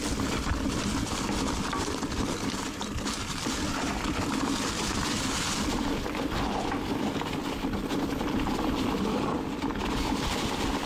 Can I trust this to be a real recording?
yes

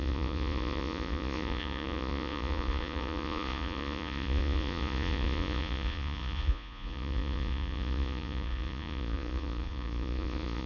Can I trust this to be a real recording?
no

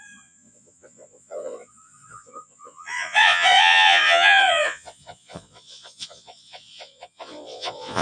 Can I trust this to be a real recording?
no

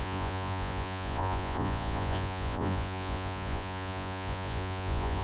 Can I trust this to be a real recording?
no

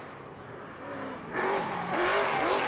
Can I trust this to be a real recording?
yes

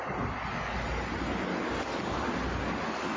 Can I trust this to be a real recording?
yes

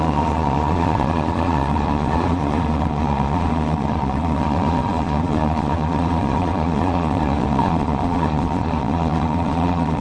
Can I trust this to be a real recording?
no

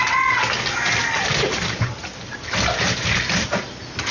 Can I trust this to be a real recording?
yes